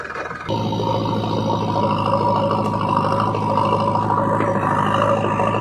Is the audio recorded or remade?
recorded